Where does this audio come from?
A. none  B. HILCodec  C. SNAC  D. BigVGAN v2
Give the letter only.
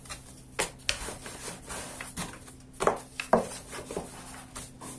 A